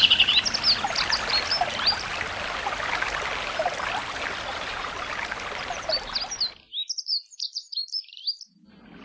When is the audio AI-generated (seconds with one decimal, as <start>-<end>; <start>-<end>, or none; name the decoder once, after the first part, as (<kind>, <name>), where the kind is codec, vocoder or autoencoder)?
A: 6.8-8.2 (vocoder, BigVGAN v2)